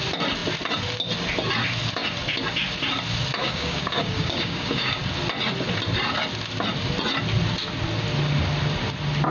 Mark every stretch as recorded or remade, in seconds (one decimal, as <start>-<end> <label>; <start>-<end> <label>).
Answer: 0.0-3.4 recorded; 3.4-5.0 remade; 5.0-9.3 recorded

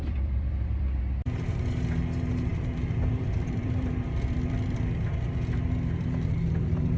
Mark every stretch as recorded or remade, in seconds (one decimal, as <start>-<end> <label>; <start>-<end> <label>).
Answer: 0.0-1.0 remade; 1.0-2.5 recorded; 2.5-7.0 remade

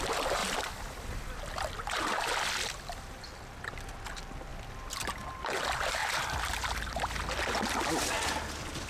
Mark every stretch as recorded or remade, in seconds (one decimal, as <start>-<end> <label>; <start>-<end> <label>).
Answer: 0.0-0.4 recorded; 0.4-4.0 remade; 4.0-4.5 recorded; 4.5-5.4 remade; 5.4-6.0 recorded; 6.0-7.4 remade; 7.4-8.9 recorded

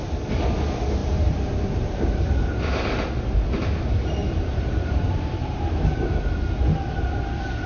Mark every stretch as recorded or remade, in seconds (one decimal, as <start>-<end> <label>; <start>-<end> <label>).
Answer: 0.0-1.0 recorded; 1.0-2.8 remade; 2.8-4.2 recorded; 4.2-6.6 remade; 6.6-7.7 recorded